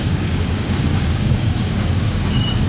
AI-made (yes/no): yes